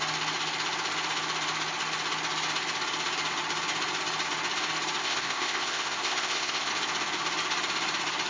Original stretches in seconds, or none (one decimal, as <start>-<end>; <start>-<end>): 0.0-5.0; 6.7-8.3